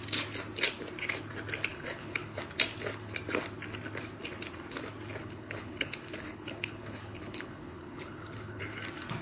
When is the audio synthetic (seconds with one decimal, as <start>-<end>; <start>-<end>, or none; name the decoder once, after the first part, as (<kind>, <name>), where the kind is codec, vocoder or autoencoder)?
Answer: 1.7-2.4 (codec, HILCodec); 5.2-8.6